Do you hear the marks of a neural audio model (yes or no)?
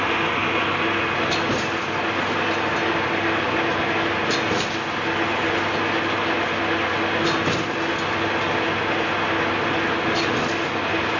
no